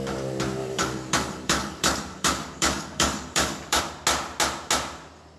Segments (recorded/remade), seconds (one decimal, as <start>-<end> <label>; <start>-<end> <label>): 0.0-0.6 recorded; 0.6-3.8 remade; 3.8-5.4 recorded